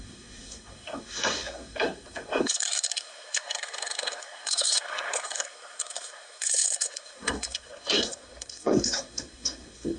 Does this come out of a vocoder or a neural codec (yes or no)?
yes